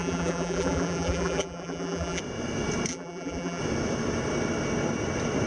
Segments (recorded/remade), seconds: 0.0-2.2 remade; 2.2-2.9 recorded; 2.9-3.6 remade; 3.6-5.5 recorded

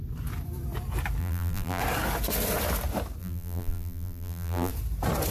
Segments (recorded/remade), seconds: 0.0-1.2 recorded; 1.2-1.8 remade; 1.8-3.2 recorded; 3.2-4.7 remade; 4.7-5.3 recorded

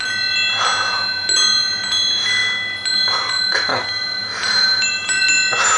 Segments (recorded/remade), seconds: 0.0-3.7 recorded; 3.7-5.2 remade; 5.2-5.8 recorded

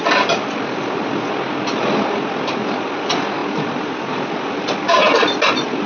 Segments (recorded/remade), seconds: 0.0-5.9 recorded

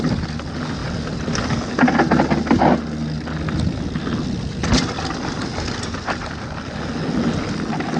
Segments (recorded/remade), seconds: 0.0-0.8 recorded; 0.8-1.5 remade; 1.5-8.0 recorded

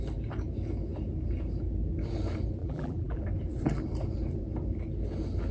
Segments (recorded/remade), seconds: 0.0-2.6 recorded; 2.6-3.2 remade; 3.2-5.5 recorded